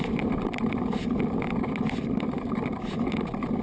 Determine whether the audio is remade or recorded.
recorded